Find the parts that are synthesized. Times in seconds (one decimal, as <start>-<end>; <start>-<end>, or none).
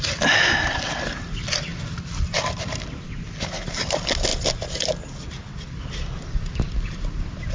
none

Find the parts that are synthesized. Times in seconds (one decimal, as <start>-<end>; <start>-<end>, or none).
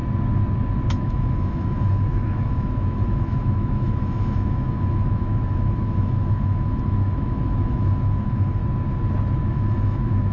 0.9-8.6; 9.5-10.3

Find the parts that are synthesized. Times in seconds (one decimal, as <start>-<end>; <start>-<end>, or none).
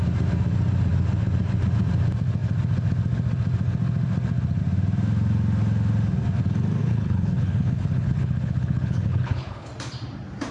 6.8-9.7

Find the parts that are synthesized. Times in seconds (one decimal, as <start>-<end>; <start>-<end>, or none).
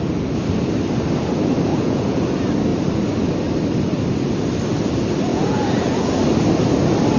1.7-2.2; 5.3-6.2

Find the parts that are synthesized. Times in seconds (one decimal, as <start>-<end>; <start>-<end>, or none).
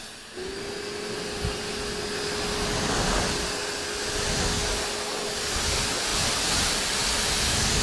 none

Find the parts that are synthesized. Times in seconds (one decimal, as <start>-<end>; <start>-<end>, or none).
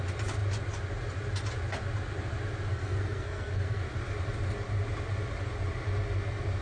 2.7-3.8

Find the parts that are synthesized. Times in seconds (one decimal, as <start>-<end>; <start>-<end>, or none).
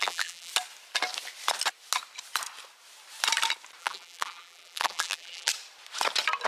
0.0-0.5; 3.8-5.5